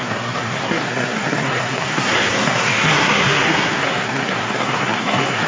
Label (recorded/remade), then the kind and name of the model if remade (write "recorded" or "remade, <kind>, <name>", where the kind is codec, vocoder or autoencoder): remade, codec, SNAC